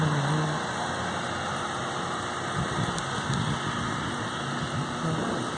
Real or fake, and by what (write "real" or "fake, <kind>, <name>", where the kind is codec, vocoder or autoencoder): real